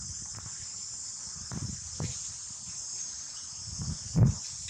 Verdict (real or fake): real